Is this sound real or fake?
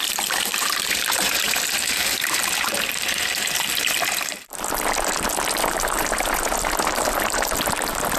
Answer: fake